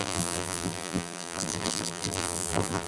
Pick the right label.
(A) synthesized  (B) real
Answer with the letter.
A